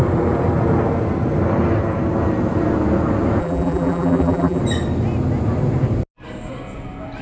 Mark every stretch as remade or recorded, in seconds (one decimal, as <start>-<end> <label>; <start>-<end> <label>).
0.0-3.4 recorded; 3.4-4.6 remade; 4.6-7.2 recorded